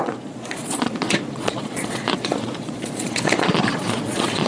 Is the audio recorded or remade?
remade